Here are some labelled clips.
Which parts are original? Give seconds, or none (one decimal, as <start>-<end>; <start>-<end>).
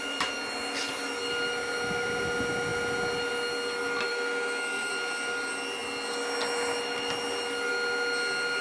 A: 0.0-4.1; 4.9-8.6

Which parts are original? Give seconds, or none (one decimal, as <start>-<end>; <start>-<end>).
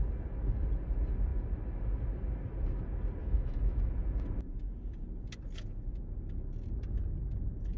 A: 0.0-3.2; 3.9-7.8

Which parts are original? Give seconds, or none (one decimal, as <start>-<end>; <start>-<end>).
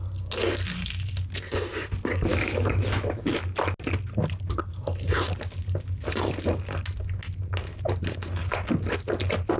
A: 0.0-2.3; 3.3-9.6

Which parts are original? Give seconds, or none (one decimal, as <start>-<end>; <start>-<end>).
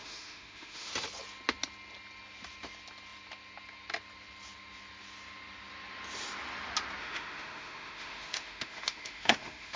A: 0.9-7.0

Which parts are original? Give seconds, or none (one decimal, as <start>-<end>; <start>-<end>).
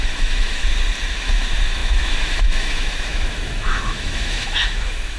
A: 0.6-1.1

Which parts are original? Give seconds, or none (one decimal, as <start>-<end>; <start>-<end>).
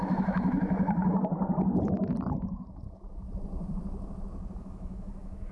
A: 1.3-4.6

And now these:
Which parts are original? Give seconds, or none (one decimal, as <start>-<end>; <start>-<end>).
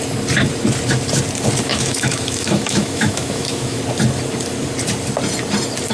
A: 0.0-1.7; 3.8-5.9